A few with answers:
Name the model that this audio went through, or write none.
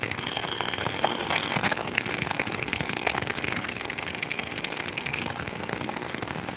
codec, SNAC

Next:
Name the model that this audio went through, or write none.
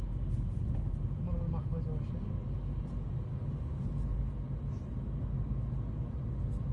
none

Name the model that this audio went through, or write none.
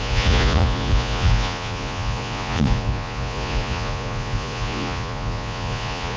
vocoder, Vocos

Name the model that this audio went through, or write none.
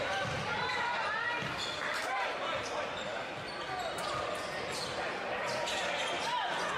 none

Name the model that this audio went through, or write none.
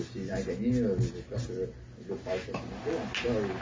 none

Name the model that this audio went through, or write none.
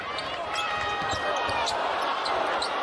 none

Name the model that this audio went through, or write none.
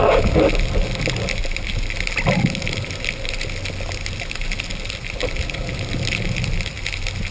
none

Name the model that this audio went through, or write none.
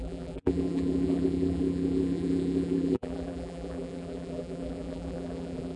vocoder, BigVGAN v2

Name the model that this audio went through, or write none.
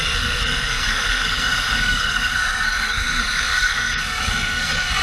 codec, SNAC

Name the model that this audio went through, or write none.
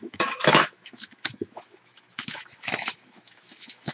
autoencoder, DAC-VAE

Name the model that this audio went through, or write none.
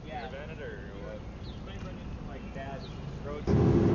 none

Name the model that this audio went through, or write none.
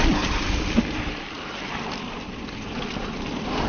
none